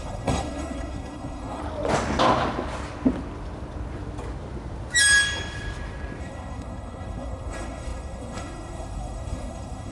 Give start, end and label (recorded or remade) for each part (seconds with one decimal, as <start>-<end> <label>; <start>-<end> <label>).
0.0-1.6 remade; 1.6-6.2 recorded; 6.2-9.9 remade